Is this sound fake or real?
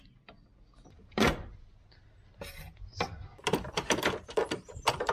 real